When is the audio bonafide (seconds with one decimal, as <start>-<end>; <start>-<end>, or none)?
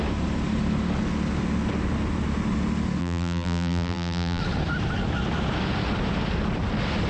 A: 0.0-3.0; 4.4-7.1